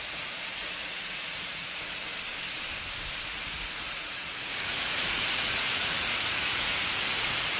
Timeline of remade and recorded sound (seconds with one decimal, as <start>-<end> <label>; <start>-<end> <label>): 0.0-2.0 remade; 2.0-3.3 recorded; 3.3-7.6 remade